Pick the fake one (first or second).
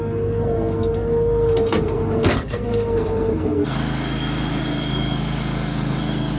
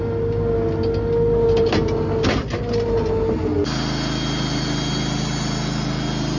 first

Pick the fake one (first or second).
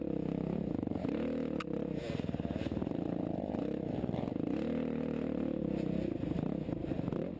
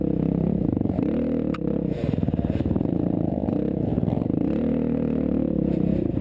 second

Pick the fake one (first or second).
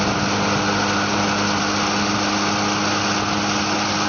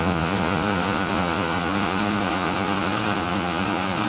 second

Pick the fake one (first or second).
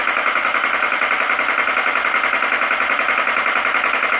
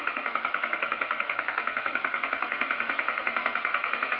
second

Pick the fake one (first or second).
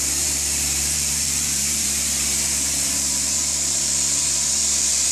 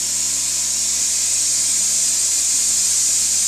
first